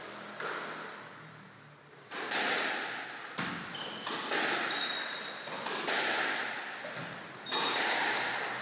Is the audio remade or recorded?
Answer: recorded